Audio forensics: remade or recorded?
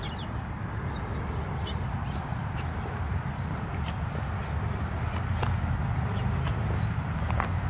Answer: recorded